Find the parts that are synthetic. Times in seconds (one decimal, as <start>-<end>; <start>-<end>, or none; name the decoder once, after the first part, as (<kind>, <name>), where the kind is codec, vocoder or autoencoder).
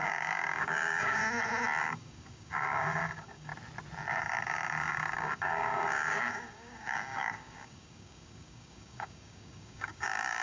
0.0-1.2 (codec, DAC); 1.8-3.5; 4.2-10.4